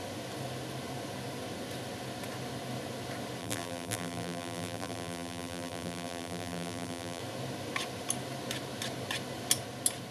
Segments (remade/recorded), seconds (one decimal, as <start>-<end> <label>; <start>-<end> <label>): 0.0-3.4 recorded; 3.4-7.2 remade; 7.2-10.1 recorded